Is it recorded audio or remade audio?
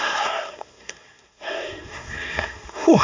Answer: remade